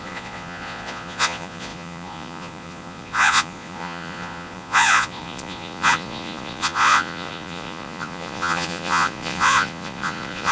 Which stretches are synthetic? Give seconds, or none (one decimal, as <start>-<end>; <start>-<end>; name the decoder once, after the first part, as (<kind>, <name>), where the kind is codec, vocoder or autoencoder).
0.0-10.5 (vocoder, Vocos)